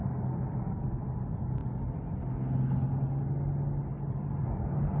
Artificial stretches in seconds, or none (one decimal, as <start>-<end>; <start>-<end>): none